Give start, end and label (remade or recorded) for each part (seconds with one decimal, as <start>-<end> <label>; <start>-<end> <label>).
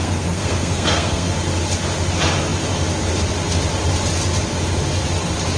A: 0.0-1.3 remade; 1.3-5.6 recorded